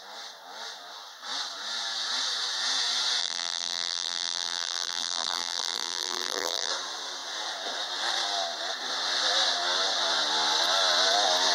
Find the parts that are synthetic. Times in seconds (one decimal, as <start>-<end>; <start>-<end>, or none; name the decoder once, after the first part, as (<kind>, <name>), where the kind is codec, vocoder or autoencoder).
3.2-6.7 (vocoder, BigVGAN v2)